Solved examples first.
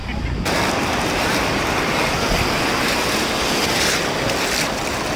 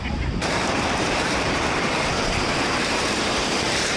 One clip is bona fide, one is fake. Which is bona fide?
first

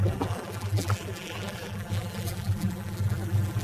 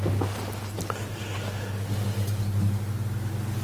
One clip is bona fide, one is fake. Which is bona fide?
second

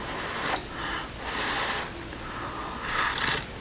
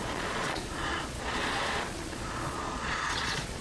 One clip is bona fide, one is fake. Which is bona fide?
first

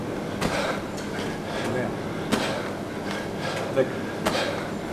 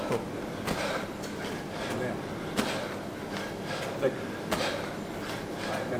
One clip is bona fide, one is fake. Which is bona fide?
first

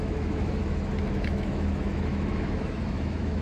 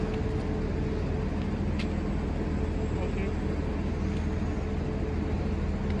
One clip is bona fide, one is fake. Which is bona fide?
second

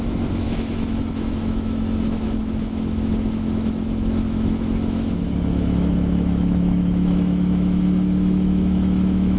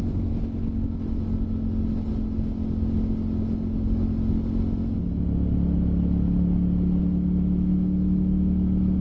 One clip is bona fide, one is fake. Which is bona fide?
second